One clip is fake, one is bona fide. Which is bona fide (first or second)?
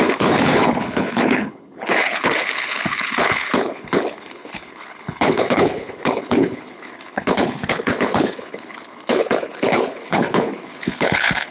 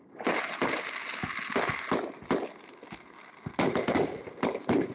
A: second